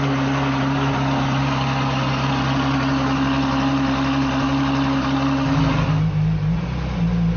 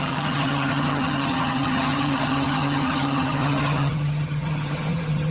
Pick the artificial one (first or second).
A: second